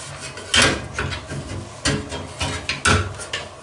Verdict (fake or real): real